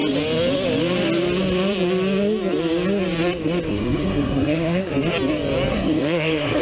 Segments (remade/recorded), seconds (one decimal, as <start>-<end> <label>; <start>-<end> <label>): 0.0-3.7 recorded; 3.7-4.9 remade; 4.9-5.7 recorded; 5.7-6.6 remade